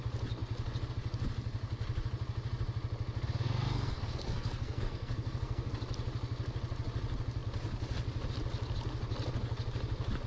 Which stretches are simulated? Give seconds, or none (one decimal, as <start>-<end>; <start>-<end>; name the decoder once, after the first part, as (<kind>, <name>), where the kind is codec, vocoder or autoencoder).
3.4-5.7 (codec, SNAC)